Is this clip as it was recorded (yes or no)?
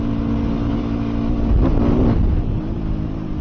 yes